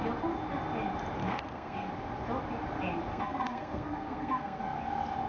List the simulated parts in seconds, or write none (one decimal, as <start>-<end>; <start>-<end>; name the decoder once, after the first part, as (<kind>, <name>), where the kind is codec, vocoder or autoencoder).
1.2-1.9 (codec, SNAC); 3.1-4.6